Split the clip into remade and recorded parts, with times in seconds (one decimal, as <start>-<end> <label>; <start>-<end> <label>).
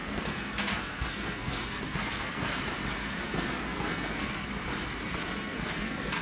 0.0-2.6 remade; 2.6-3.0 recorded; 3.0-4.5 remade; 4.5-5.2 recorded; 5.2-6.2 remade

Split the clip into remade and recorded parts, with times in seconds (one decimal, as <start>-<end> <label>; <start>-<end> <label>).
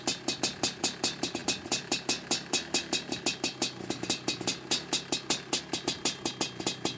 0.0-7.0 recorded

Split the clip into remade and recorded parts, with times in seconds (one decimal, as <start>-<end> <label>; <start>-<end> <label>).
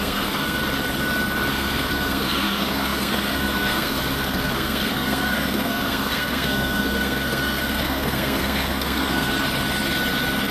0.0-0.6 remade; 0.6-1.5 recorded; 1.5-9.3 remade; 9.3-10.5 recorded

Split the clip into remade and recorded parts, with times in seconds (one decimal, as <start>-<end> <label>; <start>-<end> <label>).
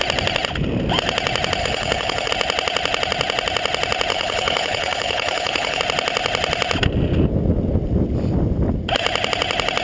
0.0-1.6 recorded; 1.6-2.3 remade; 2.3-4.1 recorded; 4.1-5.8 remade; 5.8-9.8 recorded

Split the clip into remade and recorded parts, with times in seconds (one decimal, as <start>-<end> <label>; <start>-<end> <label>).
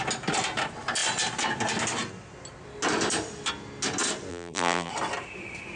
0.0-4.3 recorded; 4.3-4.9 remade; 4.9-5.8 recorded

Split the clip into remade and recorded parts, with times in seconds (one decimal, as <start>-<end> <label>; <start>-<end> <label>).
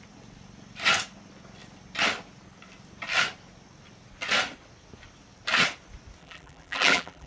0.0-6.2 recorded; 6.2-7.3 remade